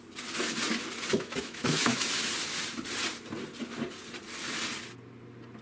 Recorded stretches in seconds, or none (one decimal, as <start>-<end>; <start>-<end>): 0.0-1.1; 2.0-5.6